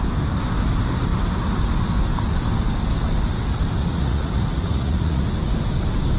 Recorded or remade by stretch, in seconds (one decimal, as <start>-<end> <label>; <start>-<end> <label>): 0.0-3.8 recorded; 3.8-5.3 remade; 5.3-6.2 recorded